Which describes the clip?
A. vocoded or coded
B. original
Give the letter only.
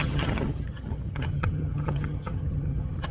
A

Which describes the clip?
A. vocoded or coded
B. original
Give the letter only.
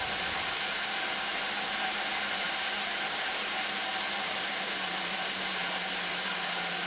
B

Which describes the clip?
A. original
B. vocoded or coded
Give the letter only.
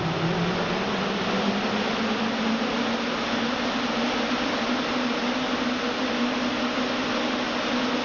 A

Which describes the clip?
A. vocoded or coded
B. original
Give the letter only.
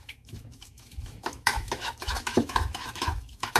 A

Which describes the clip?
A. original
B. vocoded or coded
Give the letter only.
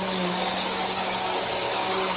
B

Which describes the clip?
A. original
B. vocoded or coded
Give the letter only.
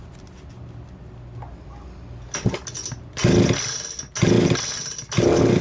A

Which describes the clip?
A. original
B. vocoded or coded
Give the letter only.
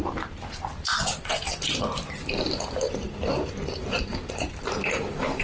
B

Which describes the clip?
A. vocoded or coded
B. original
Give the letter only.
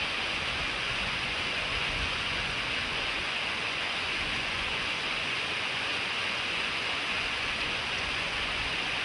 A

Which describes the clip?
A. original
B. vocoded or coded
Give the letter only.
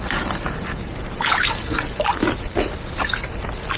A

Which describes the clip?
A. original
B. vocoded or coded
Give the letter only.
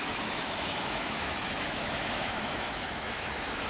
B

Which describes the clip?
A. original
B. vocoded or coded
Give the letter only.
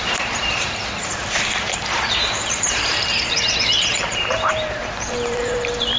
B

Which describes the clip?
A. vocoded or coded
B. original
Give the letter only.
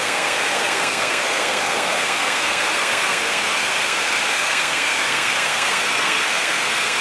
A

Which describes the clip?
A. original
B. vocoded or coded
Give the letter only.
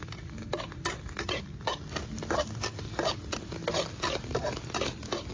A